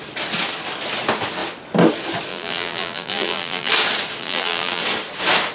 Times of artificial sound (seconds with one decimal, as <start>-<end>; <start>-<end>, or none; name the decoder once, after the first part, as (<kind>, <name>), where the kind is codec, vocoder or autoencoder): 2.3-3.7 (vocoder, BigVGAN v2); 4.2-4.8